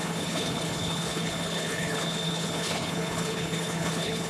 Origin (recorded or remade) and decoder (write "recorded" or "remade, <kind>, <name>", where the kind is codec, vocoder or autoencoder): remade, codec, HILCodec